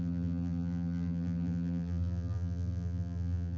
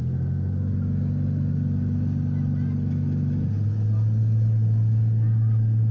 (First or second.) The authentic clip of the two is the second